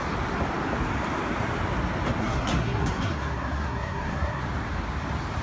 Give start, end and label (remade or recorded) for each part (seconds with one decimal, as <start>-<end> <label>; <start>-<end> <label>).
0.0-2.2 recorded; 2.2-4.4 remade; 4.4-5.4 recorded